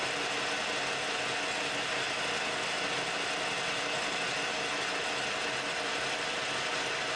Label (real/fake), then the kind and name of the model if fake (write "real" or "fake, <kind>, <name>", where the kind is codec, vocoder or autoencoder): real